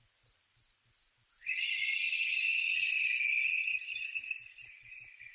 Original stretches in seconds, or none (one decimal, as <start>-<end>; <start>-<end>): 0.0-5.3